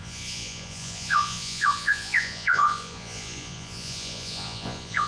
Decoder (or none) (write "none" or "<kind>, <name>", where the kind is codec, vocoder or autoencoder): vocoder, Vocos